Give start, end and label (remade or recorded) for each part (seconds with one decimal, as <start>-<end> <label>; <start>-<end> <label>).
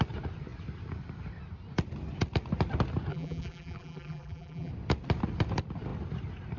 0.0-3.1 recorded; 3.1-4.7 remade; 4.7-6.6 recorded